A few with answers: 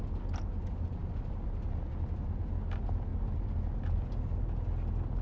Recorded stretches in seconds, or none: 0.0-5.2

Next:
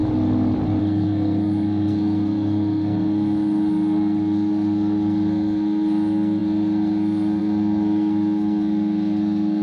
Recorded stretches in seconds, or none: 0.0-0.8

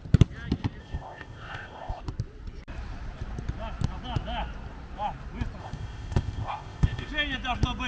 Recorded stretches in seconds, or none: 0.0-0.8; 2.0-5.6; 7.1-7.9